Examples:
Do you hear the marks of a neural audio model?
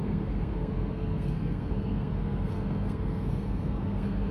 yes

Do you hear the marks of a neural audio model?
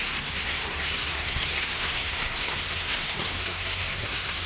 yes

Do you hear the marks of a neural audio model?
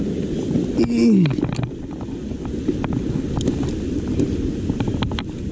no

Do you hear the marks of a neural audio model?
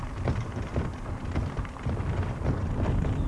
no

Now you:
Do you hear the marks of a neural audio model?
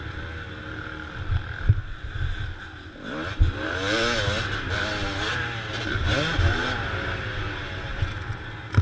no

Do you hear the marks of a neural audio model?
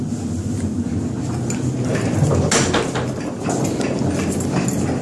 no